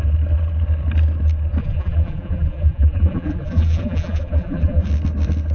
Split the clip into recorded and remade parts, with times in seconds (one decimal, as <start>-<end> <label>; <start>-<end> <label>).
0.0-1.6 recorded; 1.6-4.9 remade; 4.9-5.5 recorded